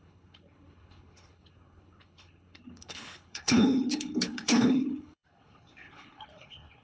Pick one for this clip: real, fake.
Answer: fake